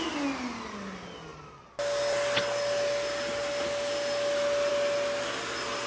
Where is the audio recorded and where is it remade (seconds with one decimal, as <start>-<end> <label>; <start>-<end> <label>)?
0.0-5.9 recorded